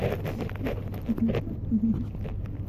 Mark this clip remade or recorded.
recorded